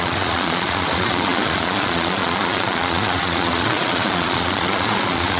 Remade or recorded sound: remade